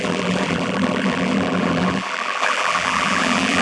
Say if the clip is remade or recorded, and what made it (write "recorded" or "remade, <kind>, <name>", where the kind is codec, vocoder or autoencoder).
remade, vocoder, BigVGAN v2